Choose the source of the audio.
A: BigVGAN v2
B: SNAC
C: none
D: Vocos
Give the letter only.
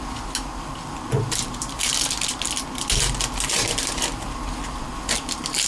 C